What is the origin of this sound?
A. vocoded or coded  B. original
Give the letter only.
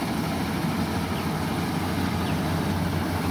B